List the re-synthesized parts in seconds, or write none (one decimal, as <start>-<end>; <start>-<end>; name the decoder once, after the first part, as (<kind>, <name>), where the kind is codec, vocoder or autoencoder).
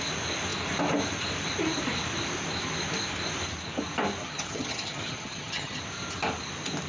4.2-5.8 (vocoder, HiFi-GAN)